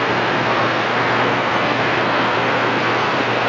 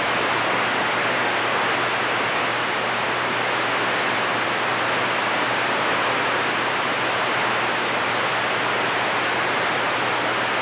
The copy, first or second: first